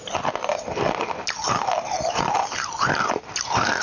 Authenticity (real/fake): real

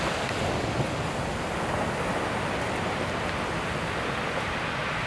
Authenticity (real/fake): real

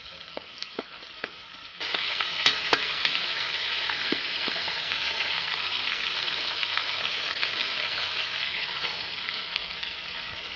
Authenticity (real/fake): fake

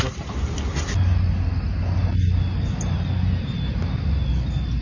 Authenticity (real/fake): real